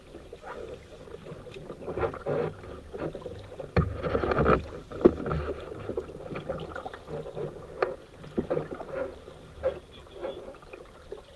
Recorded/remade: recorded